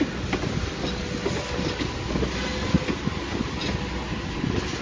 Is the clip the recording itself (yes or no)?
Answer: yes